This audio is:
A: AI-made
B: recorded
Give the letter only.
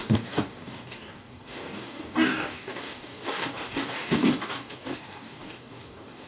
A